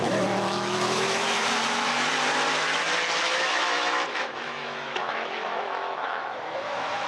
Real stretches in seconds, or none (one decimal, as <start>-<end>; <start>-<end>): 1.9-3.2

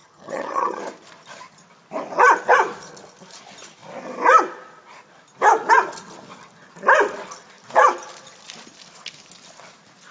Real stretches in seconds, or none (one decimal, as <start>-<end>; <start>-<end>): 0.8-10.1

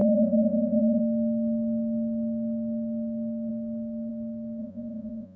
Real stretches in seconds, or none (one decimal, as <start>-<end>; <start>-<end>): 1.0-4.6

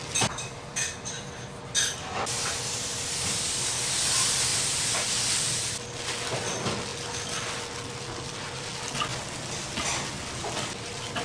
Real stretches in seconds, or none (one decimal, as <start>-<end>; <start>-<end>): 0.0-4.5; 5.7-11.2